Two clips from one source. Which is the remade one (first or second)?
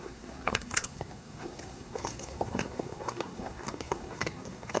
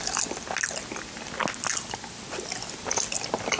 first